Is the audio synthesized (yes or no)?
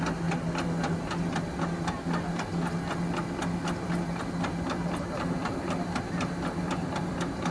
no